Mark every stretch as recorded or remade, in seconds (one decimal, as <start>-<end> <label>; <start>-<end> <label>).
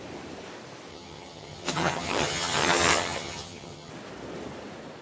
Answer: 0.0-0.9 recorded; 0.9-3.9 remade; 3.9-5.0 recorded